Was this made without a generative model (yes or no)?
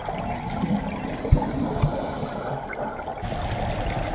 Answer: yes